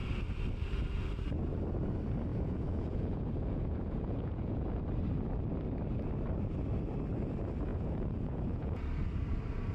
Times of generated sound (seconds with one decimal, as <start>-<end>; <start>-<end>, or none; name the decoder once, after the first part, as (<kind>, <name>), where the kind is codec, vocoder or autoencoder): 2.3-4.8 (vocoder, Vocos); 7.7-8.8